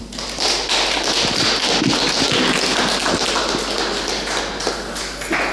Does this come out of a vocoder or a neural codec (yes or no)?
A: no